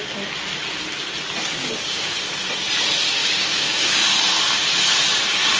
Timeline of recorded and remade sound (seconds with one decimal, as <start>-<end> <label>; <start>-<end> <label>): 0.0-1.6 recorded; 1.6-2.3 remade; 2.3-3.2 recorded; 3.2-4.1 remade; 4.1-5.6 recorded

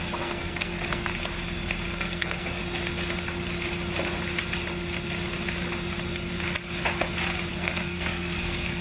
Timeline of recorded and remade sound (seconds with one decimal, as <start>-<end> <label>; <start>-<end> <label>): 0.0-1.1 remade; 1.1-1.9 recorded; 1.9-2.6 remade; 2.6-7.5 recorded; 7.5-8.8 remade